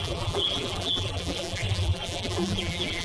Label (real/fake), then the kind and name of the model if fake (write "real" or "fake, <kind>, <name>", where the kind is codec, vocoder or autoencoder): fake, vocoder, BigVGAN v2